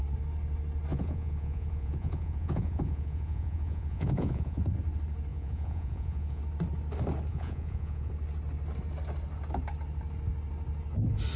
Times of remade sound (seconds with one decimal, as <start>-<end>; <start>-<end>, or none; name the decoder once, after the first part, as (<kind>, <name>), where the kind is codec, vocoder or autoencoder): 0.9-4.6 (vocoder, Vocos); 5.3-6.4; 7.3-8.1